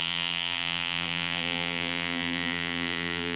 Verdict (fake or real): fake